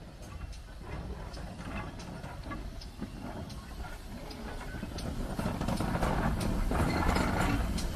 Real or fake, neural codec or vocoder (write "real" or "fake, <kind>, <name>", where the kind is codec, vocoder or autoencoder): real